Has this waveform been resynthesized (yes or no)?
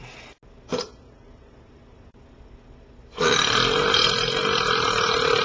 no